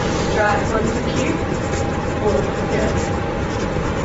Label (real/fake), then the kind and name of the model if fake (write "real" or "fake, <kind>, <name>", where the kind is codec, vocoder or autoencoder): fake, vocoder, BigVGAN v2